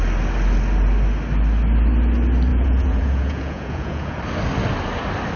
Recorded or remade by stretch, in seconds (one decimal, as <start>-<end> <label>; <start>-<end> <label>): 0.0-2.5 recorded; 2.5-4.2 remade; 4.2-5.4 recorded